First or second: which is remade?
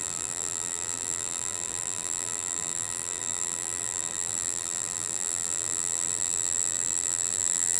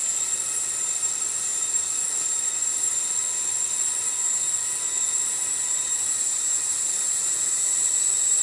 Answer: first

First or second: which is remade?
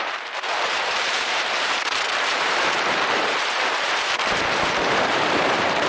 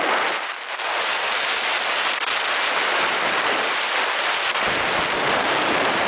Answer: first